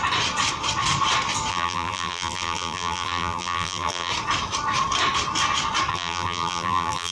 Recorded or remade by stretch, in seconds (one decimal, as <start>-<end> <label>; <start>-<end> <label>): 0.0-1.5 recorded; 1.5-4.1 remade; 4.1-5.9 recorded; 5.9-7.1 remade